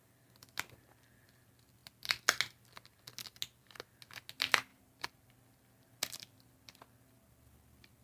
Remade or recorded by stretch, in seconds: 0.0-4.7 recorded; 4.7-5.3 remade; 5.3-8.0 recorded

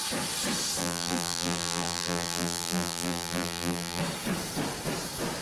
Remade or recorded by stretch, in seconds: 0.0-0.8 recorded; 0.8-4.0 remade; 4.0-5.4 recorded

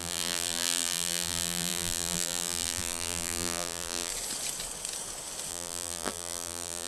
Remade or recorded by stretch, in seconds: 0.0-4.1 remade; 4.1-5.5 recorded; 5.5-6.9 remade

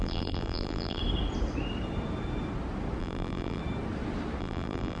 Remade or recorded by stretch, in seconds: 0.0-1.0 remade; 1.0-3.0 recorded; 3.0-3.6 remade; 3.6-4.4 recorded; 4.4-5.0 remade

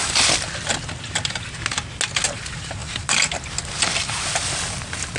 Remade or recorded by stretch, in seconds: 0.0-2.8 recorded; 2.8-3.5 remade; 3.5-5.2 recorded

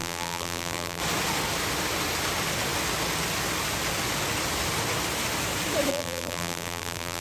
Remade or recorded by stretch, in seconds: 0.0-1.0 remade; 1.0-5.9 recorded; 5.9-7.2 remade

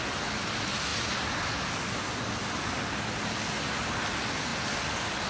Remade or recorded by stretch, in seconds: 0.0-5.3 recorded